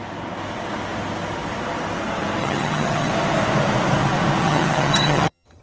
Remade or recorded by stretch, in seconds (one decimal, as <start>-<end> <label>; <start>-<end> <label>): 0.0-2.4 recorded; 2.4-3.1 remade; 3.1-4.4 recorded; 4.4-5.6 remade